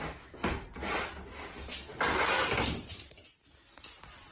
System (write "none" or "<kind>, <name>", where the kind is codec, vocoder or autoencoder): none